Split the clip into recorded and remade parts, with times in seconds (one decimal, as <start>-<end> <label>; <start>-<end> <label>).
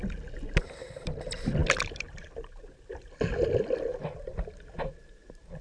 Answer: 0.0-5.6 recorded